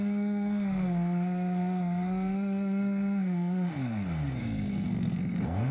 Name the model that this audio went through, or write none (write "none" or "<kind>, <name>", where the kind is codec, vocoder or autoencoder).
codec, SNAC